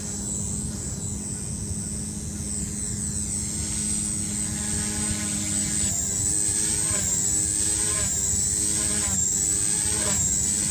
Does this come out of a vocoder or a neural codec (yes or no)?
no